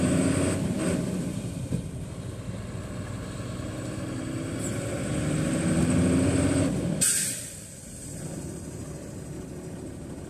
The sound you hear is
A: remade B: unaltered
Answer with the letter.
B